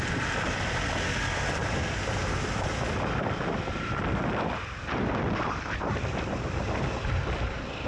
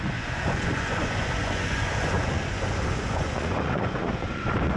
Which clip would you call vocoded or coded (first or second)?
second